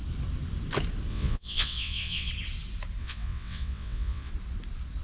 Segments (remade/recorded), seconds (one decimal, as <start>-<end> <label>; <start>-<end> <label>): 0.0-1.1 recorded; 1.1-2.3 remade; 2.3-3.0 recorded; 3.0-4.3 remade; 4.3-5.0 recorded